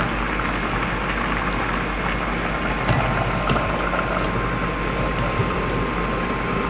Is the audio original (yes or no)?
yes